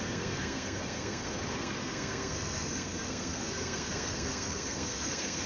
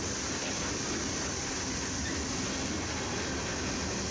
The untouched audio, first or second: second